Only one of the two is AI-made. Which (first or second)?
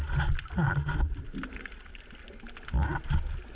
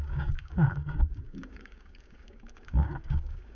second